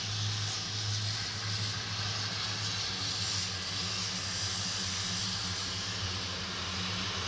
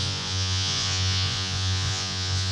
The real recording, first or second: first